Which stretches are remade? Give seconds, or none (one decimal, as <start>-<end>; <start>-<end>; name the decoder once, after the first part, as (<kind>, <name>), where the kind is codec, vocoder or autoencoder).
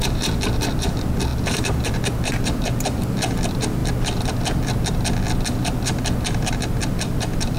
0.0-3.8 (vocoder, BigVGAN v2); 6.5-7.6